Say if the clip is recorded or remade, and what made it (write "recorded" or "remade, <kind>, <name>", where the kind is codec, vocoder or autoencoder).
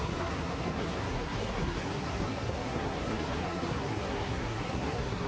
remade, codec, SNAC